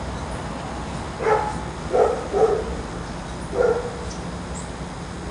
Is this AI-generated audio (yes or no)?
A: no